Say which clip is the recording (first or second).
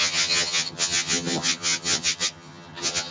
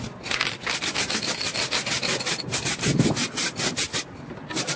second